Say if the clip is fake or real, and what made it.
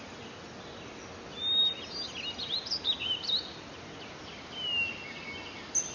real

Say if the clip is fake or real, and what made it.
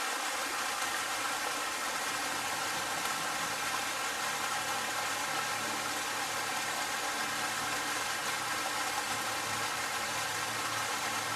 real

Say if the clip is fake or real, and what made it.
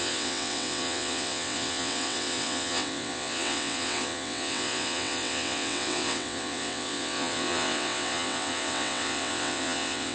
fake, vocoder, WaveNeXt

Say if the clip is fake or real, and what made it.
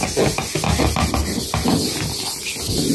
real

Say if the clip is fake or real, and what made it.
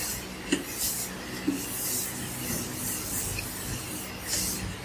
real